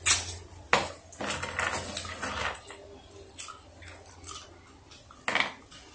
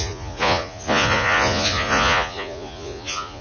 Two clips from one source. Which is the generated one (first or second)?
second